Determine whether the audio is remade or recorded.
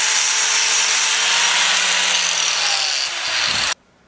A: recorded